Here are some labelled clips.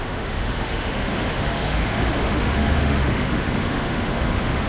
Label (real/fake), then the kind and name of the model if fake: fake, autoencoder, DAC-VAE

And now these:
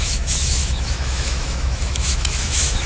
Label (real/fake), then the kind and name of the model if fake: fake, autoencoder, DAC-VAE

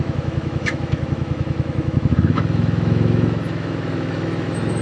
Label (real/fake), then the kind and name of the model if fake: fake, autoencoder, DAC-VAE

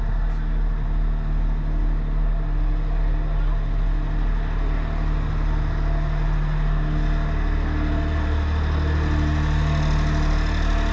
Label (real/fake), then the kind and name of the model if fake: real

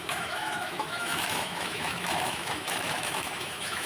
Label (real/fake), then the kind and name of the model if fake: fake, autoencoder, DAC-VAE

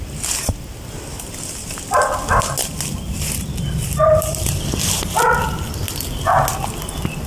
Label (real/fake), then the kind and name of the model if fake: real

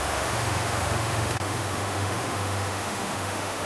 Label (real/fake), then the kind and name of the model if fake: fake, autoencoder, DAC-VAE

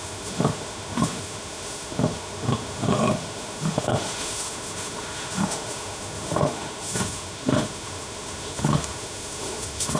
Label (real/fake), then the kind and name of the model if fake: fake, autoencoder, DAC-VAE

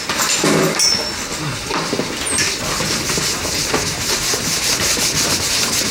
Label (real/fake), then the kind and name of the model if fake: real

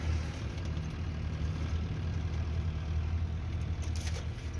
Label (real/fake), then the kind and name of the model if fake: real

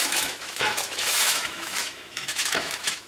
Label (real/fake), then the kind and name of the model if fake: fake, autoencoder, DAC-VAE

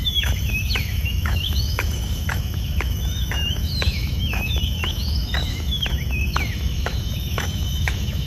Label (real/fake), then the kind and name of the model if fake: fake, autoencoder, DAC-VAE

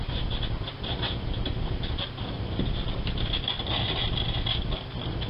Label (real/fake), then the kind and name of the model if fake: real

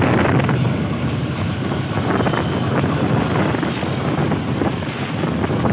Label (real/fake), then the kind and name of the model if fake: real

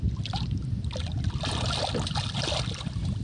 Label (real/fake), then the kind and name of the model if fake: real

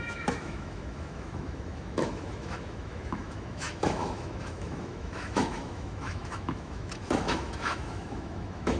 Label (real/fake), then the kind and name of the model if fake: fake, autoencoder, DAC-VAE